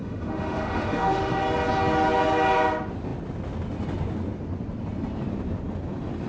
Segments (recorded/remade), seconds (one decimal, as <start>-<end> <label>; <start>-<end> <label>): 0.0-1.4 remade; 1.4-6.3 recorded